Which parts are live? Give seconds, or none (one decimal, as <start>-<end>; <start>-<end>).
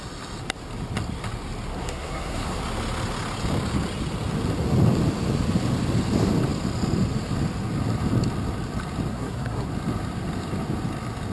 0.0-1.7; 2.6-9.1; 9.7-11.3